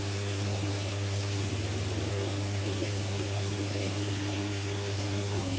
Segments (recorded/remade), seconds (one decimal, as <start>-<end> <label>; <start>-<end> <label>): 0.0-1.5 remade; 1.5-2.1 recorded; 2.1-5.6 remade